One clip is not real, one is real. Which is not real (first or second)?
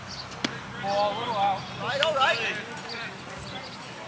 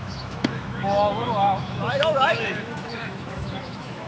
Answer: second